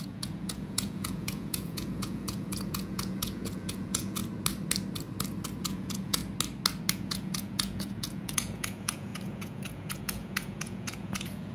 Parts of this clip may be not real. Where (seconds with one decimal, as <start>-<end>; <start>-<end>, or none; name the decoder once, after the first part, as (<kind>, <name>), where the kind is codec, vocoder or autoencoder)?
0.0-4.2 (vocoder, Vocos); 5.6-6.2; 6.9-11.5